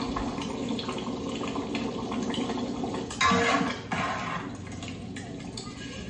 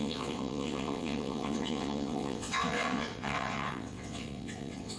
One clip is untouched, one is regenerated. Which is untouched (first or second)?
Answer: first